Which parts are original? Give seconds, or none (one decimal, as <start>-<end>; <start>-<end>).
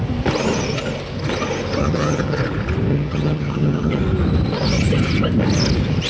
0.0-1.8; 2.4-2.9; 4.0-6.1